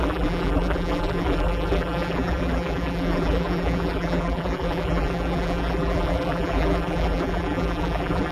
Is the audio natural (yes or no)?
no